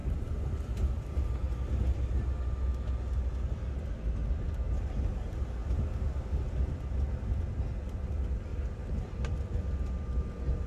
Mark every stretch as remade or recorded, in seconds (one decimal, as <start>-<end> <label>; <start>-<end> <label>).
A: 0.0-1.7 remade; 1.7-8.5 recorded; 8.5-9.8 remade; 9.8-10.7 recorded